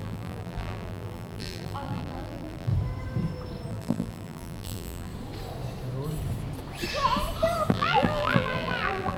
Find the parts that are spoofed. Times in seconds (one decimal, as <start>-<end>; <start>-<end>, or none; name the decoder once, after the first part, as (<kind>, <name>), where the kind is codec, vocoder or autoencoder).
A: 0.0-2.7 (vocoder, BigVGAN v2); 3.7-5.1; 7.7-9.2